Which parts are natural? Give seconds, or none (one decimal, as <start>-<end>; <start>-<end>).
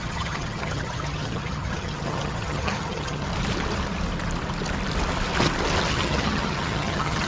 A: 3.3-5.8